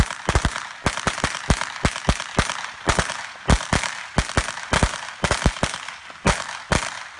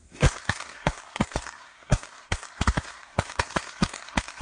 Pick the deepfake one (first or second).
second